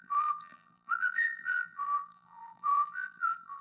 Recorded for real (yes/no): no